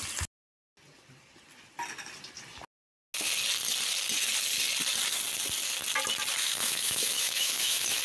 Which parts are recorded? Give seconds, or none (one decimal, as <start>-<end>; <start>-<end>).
0.0-6.4